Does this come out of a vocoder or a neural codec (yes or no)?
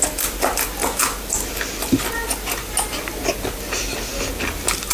no